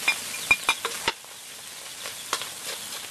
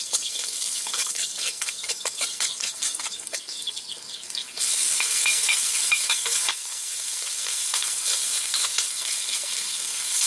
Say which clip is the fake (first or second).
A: second